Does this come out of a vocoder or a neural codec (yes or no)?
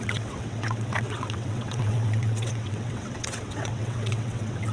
yes